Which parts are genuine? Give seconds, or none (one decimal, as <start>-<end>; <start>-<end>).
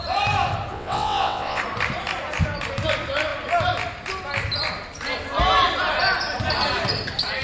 0.0-0.7; 1.6-7.4